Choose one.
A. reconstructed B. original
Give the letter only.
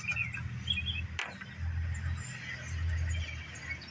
B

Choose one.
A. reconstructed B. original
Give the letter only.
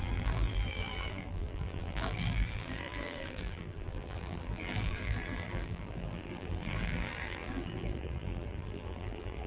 A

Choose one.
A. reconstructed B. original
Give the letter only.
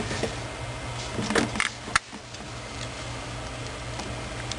B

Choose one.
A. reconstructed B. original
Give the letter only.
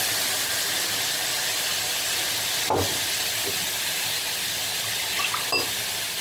B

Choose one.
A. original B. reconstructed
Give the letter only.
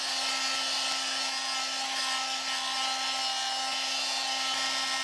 A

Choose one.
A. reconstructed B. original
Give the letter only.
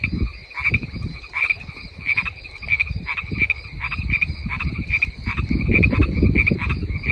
A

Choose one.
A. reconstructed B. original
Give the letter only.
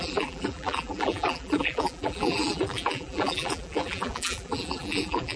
A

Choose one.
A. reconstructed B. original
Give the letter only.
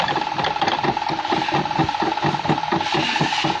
A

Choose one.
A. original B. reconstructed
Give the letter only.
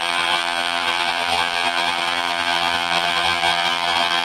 B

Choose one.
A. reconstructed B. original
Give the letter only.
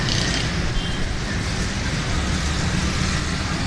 B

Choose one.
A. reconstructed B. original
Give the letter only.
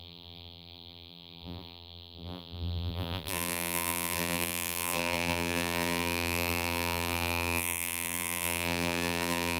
A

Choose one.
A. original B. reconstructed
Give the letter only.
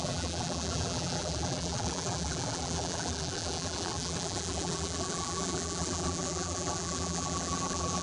B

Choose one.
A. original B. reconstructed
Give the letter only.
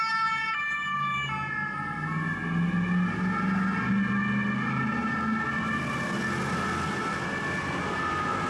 A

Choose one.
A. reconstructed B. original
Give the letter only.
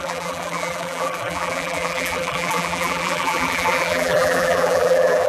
A